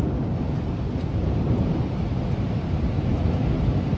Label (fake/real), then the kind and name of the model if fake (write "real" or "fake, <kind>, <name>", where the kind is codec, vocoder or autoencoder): real